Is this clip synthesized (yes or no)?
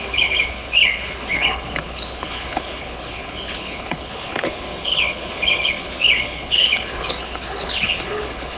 yes